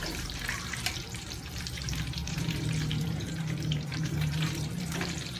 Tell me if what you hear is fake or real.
fake